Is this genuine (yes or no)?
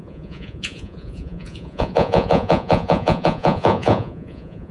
no